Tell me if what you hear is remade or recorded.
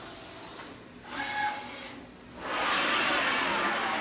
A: recorded